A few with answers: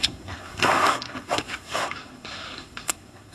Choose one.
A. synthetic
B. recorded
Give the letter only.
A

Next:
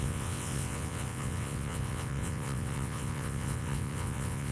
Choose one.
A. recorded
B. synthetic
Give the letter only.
B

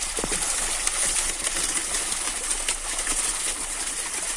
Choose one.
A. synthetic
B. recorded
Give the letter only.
B